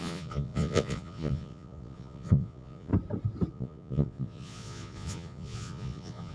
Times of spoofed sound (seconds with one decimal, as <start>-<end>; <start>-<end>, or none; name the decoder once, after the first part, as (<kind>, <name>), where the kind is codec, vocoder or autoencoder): 0.0-2.9 (vocoder, Vocos); 3.5-6.3